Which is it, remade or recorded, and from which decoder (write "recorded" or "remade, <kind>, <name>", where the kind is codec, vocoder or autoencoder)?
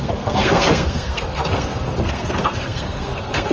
remade, codec, SNAC